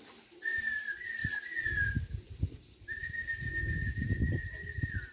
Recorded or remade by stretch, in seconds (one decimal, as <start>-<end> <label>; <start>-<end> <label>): 0.0-5.1 recorded